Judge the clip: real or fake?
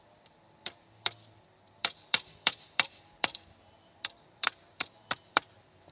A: fake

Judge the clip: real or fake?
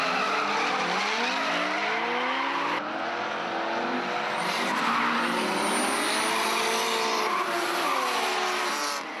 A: real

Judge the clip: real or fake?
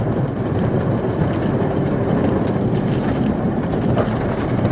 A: real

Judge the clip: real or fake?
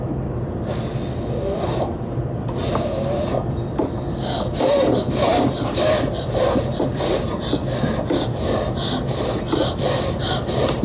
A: real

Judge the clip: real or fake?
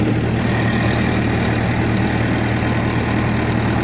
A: real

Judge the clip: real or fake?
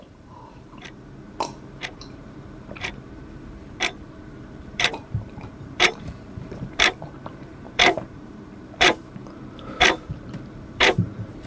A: fake